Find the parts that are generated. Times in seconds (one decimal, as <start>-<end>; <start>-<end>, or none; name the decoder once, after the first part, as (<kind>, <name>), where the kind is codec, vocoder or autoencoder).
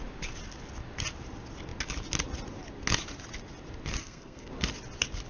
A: 4.0-4.5 (codec, SNAC)